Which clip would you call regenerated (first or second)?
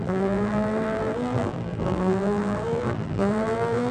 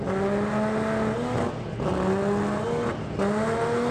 first